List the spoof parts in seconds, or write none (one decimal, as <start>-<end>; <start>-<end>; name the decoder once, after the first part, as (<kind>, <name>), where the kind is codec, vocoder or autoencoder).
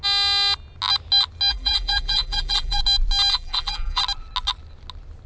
1.5-2.8 (vocoder, BigVGAN v2); 3.3-4.0